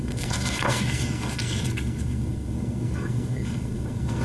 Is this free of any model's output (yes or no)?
no